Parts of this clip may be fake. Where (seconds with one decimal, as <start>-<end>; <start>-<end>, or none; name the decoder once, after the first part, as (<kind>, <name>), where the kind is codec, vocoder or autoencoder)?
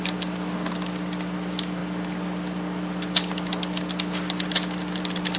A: none